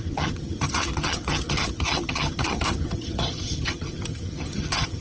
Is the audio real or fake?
fake